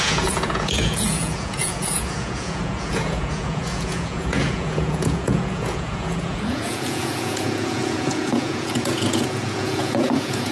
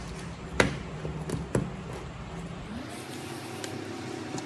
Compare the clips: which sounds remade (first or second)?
first